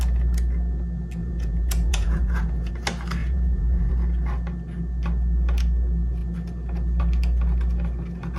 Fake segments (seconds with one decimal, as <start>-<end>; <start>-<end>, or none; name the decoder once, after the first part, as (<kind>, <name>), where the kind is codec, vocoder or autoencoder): 1.2-2.7 (vocoder, Vocos); 3.2-3.9